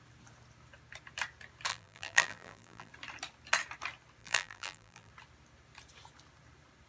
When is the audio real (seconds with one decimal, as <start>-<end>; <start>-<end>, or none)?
0.0-1.7; 2.9-4.2; 5.1-6.9